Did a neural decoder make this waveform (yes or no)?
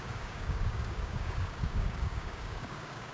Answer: yes